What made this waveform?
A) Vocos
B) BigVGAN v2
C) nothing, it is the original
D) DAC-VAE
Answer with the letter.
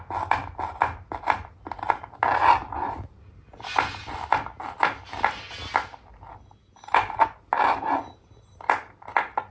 C